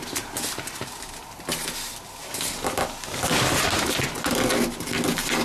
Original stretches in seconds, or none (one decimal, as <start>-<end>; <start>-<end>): 0.0-5.4